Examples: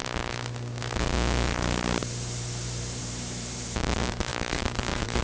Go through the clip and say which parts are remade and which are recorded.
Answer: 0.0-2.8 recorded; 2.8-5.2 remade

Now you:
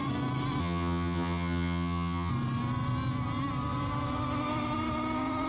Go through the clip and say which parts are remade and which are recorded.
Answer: 0.0-0.6 recorded; 0.6-2.3 remade; 2.3-5.5 recorded